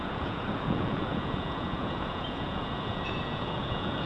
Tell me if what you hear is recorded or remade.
remade